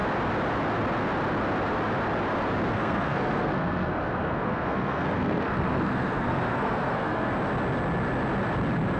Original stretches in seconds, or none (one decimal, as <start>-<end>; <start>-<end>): 0.0-2.7; 7.3-9.0